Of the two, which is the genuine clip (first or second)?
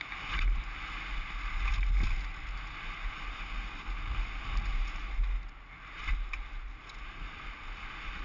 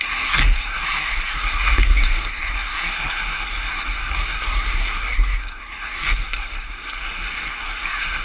first